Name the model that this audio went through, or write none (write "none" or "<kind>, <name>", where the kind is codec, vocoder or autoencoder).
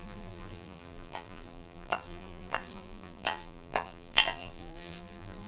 vocoder, BigVGAN v2